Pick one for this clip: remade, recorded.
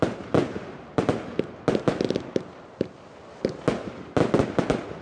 recorded